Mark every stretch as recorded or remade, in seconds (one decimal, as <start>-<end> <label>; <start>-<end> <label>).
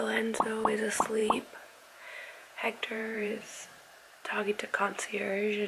0.0-1.2 recorded; 1.2-3.6 remade; 3.6-5.7 recorded